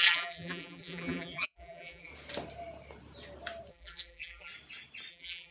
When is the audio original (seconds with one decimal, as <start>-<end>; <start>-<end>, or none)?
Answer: 2.1-3.7; 4.5-5.1